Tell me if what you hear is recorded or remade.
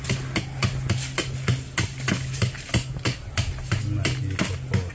recorded